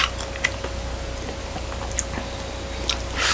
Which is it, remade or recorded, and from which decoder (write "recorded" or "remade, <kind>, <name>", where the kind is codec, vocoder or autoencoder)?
recorded